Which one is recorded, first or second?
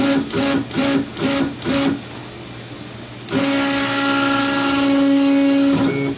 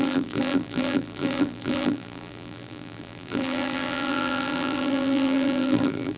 first